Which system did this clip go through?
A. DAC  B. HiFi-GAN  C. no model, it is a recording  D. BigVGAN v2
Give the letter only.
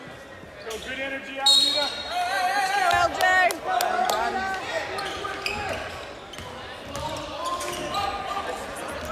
C